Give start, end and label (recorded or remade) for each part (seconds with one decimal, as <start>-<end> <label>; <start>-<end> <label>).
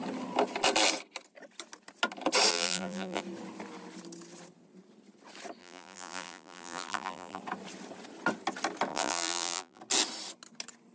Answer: 0.0-2.5 recorded; 2.5-3.2 remade; 3.2-5.6 recorded; 5.6-7.4 remade; 7.4-8.9 recorded; 8.9-9.8 remade; 9.8-10.9 recorded